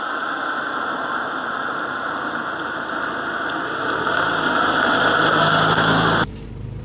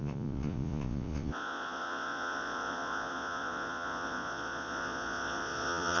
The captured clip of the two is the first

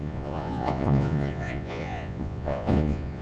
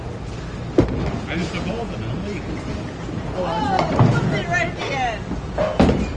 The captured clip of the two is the second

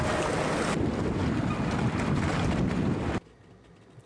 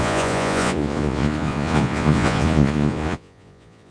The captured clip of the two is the first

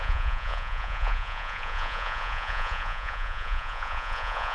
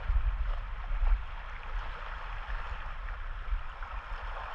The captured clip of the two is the second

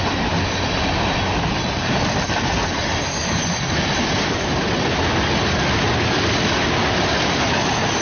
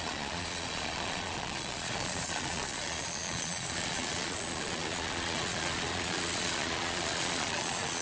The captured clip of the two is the first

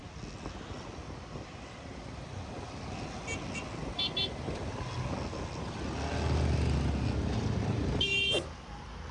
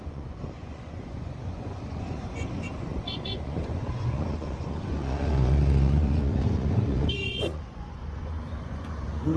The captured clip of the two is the first